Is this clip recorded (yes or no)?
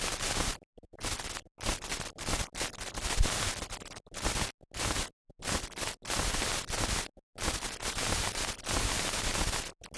yes